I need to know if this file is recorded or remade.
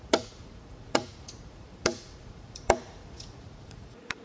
remade